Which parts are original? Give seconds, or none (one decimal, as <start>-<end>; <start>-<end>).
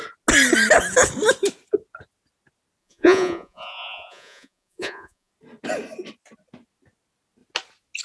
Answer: 0.0-2.8; 5.3-8.0